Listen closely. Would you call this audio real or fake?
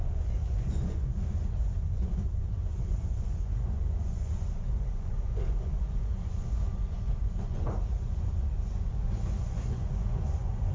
fake